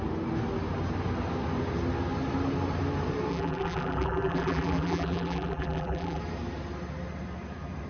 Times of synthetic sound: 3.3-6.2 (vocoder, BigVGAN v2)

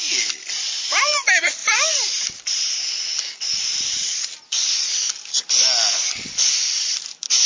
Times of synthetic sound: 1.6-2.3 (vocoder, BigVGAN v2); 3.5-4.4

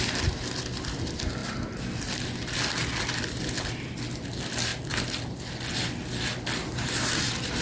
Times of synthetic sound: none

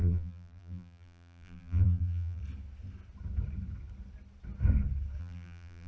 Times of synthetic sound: 0.0-2.4 (vocoder, BigVGAN v2); 5.2-5.9

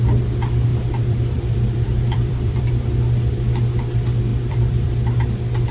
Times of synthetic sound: 0.7-2.6 (vocoder, BigVGAN v2); 4.3-4.9